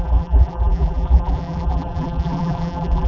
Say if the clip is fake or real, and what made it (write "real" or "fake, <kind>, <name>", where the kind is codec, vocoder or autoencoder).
fake, vocoder, BigVGAN v2